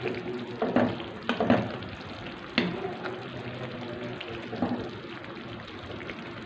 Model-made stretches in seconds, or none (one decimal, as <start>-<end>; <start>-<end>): none